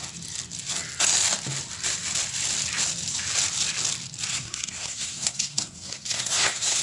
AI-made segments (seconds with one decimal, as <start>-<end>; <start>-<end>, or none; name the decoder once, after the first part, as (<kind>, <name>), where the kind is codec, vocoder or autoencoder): 4.3-6.8 (codec, SNAC)